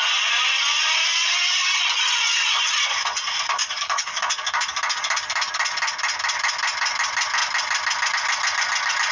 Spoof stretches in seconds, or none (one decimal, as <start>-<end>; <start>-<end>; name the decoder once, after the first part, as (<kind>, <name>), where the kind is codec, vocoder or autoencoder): 3.6-4.2 (codec, DAC)